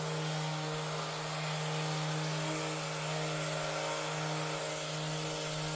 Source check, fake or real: real